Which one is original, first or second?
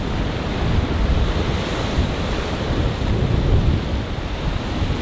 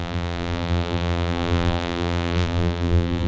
first